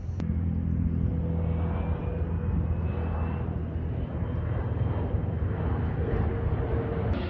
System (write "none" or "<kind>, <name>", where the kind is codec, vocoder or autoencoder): none